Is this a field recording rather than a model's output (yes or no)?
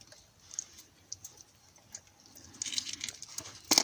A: yes